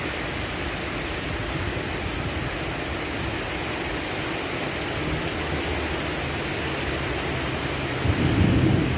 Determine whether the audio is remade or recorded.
recorded